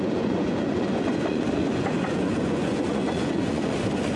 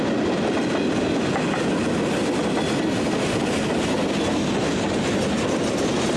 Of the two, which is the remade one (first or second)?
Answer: first